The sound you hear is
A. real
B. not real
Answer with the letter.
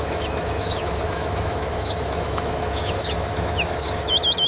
B